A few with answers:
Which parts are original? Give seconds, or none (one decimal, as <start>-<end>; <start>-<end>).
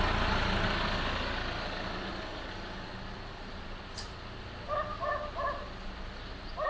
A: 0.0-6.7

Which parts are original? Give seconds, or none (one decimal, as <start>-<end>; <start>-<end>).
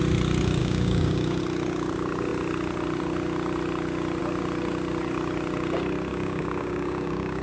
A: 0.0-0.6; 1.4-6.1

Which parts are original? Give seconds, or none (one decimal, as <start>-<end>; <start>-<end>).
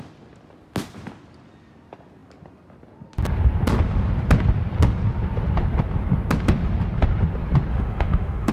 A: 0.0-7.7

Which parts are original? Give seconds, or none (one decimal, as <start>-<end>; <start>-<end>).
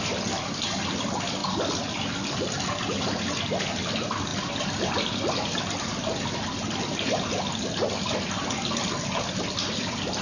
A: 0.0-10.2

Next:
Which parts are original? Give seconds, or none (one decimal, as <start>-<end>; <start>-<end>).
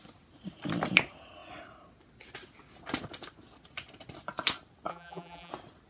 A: 0.0-4.9; 5.5-5.9